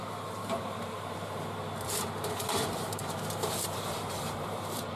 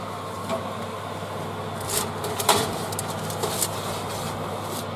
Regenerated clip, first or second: first